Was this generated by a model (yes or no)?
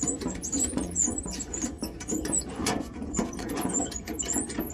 yes